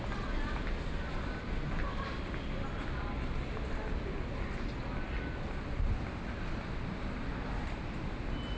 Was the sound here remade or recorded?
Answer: recorded